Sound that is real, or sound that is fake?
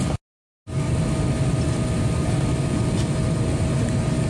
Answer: real